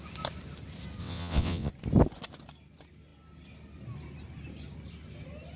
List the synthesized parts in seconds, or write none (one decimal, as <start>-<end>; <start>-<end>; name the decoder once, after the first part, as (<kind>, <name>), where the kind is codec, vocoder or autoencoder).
1.0-1.7 (vocoder, WaveNeXt)